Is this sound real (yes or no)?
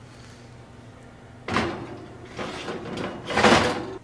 yes